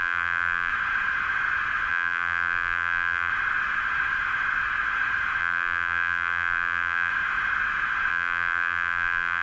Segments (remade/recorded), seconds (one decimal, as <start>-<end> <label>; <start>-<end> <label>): 0.0-0.7 remade; 0.7-1.9 recorded; 1.9-3.3 remade; 3.3-5.4 recorded; 5.4-7.1 remade; 7.1-8.1 recorded; 8.1-9.4 remade